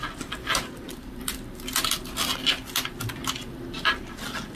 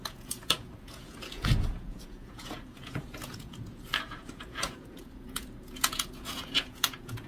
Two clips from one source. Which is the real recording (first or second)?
first